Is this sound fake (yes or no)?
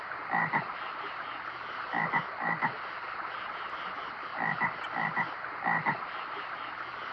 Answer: no